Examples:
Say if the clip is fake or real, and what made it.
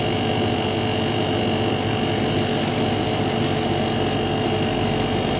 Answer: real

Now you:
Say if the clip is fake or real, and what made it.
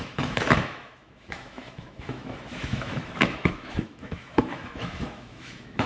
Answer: fake, autoencoder, DAC-VAE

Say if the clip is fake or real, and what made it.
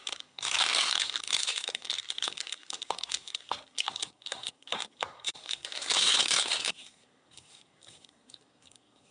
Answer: fake, codec, SNAC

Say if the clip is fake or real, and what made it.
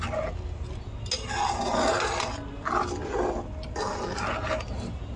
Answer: real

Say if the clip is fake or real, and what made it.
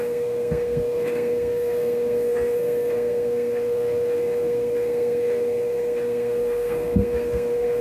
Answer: fake, codec, SNAC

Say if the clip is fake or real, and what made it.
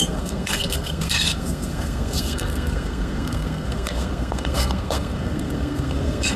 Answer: fake, codec, SNAC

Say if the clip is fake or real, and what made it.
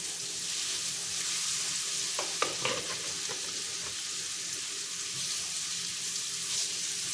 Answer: real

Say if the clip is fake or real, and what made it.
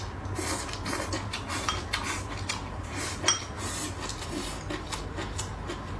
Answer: real